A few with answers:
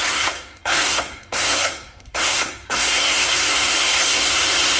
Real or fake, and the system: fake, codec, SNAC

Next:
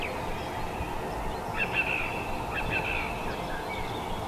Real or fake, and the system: real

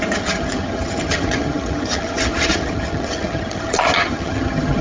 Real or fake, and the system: fake, vocoder, HiFi-GAN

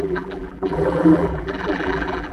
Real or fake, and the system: fake, vocoder, BigVGAN v2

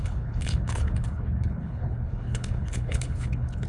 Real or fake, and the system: fake, codec, HILCodec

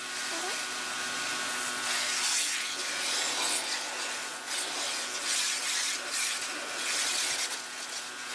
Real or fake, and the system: real